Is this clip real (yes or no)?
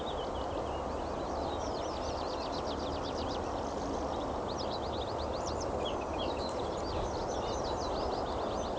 yes